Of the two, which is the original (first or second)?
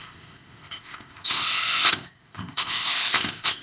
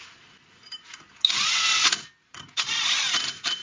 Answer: second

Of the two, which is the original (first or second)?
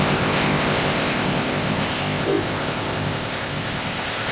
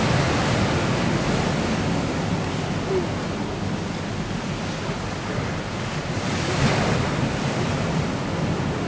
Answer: second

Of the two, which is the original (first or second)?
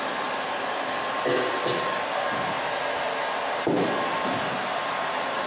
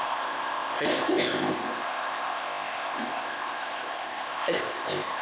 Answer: first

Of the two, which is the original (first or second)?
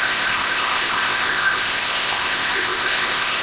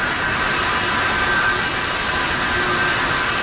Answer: second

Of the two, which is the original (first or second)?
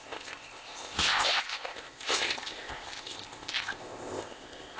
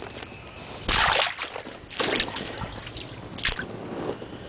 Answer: second